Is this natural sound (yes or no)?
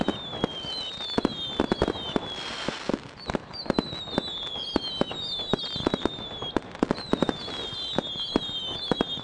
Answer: yes